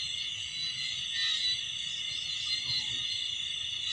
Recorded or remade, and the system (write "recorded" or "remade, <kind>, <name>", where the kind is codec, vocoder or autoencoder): recorded